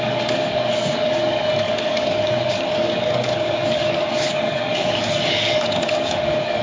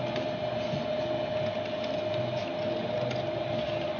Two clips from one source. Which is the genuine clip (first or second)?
second